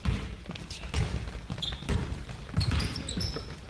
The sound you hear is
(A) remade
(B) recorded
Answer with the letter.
B